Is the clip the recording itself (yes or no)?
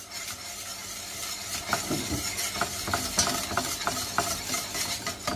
yes